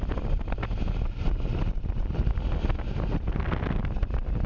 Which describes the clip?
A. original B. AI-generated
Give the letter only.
A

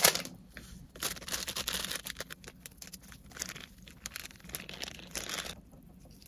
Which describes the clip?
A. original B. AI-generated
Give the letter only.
A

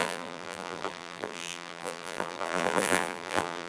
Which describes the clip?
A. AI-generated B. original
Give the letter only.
A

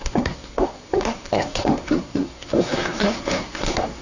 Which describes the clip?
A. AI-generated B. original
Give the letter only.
A